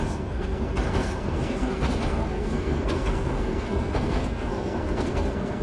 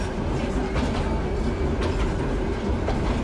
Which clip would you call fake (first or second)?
first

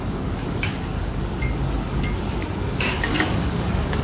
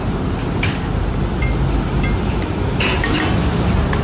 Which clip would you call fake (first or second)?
first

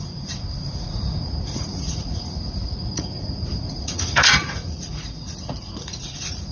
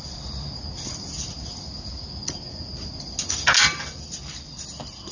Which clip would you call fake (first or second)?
first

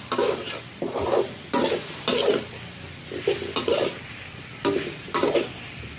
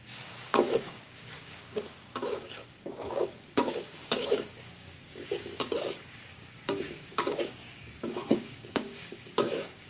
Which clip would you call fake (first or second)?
second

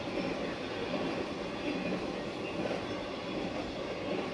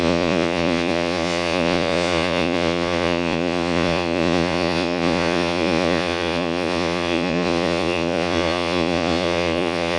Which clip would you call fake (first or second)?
second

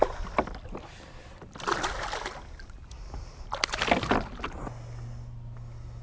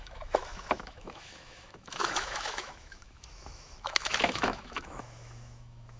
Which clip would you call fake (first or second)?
second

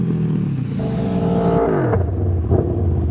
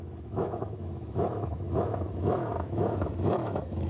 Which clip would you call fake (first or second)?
second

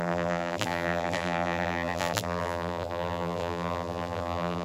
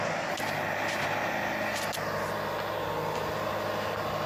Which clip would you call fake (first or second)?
first